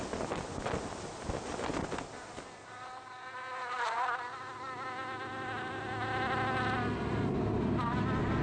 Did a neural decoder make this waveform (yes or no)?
no